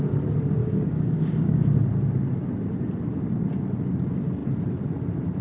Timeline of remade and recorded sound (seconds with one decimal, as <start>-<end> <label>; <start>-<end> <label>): 0.0-0.6 recorded; 0.6-1.6 remade; 1.6-5.4 recorded